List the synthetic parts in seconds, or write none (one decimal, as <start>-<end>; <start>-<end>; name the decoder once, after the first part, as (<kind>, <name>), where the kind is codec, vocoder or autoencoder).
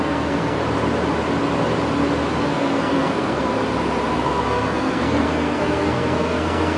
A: 0.0-0.6 (codec, SNAC); 2.4-3.5; 4.1-6.8